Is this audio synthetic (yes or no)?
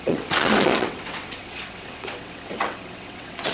yes